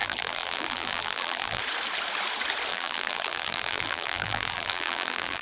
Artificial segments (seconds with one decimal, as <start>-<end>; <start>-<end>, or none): 0.0-1.6; 2.7-5.4